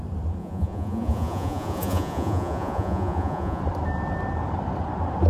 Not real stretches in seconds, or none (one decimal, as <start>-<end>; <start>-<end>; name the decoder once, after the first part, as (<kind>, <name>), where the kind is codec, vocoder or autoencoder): 0.4-3.6 (vocoder, Vocos)